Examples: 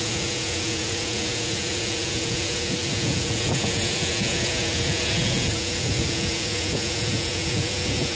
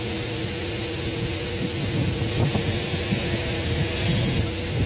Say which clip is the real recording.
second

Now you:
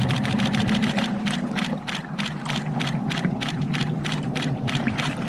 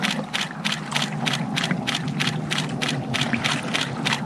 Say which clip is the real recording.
second